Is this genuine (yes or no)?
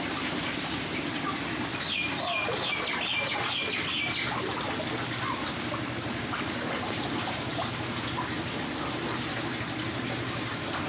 yes